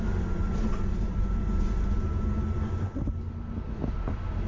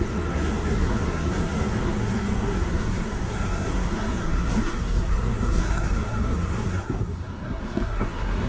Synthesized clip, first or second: second